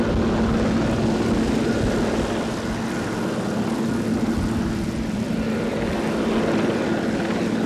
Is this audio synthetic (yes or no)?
no